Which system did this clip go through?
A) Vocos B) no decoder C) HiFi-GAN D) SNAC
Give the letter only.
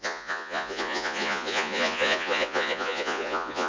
A